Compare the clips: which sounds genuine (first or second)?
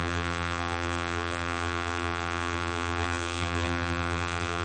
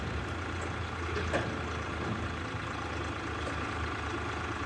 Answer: second